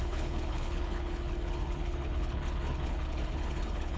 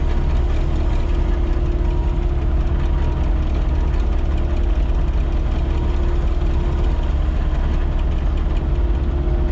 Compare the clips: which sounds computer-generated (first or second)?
first